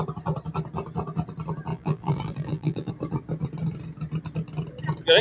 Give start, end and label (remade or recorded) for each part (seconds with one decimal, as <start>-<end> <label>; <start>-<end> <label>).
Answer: 0.0-1.7 recorded; 1.7-2.9 remade; 2.9-5.2 recorded